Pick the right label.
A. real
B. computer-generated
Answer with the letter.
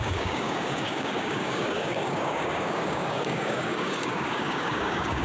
B